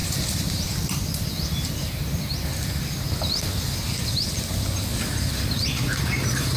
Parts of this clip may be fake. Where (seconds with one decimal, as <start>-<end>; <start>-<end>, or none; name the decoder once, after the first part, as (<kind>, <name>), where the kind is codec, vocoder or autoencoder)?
none